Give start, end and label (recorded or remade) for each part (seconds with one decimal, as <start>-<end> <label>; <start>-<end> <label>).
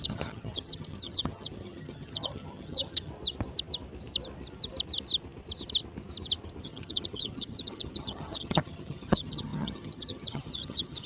0.0-3.1 remade; 3.1-6.6 recorded; 6.6-11.1 remade